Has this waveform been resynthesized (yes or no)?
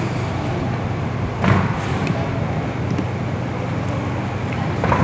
no